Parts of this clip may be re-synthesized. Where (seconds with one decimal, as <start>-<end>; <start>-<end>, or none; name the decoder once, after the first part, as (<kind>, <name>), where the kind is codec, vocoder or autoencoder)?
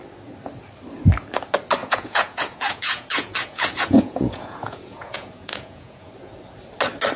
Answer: 1.8-6.1 (vocoder, Vocos)